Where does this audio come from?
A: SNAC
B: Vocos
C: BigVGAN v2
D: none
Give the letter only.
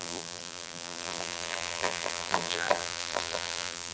C